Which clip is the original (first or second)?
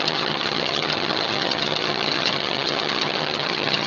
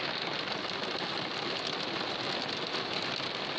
second